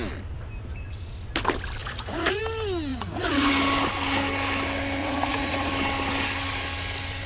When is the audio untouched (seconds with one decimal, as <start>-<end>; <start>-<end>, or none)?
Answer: 0.0-1.8; 2.4-2.9; 3.5-5.0; 5.7-7.3